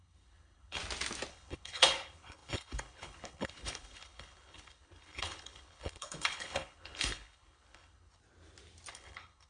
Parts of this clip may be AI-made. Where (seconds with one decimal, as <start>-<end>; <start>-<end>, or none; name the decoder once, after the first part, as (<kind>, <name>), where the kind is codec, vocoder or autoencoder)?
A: 0.0-0.8 (codec, HILCodec); 1.3-8.2; 8.9-9.5